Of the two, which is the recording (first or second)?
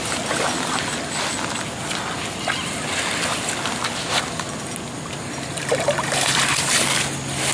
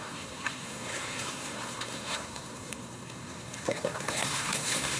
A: first